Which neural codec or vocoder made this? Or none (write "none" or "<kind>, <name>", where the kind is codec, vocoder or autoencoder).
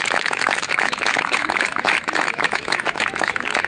autoencoder, DAC-VAE